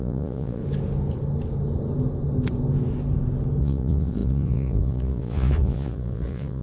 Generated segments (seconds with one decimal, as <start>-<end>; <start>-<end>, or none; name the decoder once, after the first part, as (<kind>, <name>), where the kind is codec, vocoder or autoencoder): 0.0-0.6 (vocoder, Vocos); 3.6-6.6